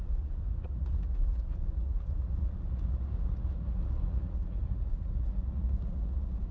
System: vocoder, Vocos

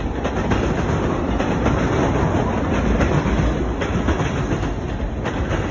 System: none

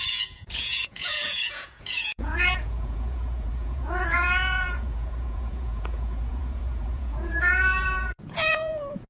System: vocoder, Vocos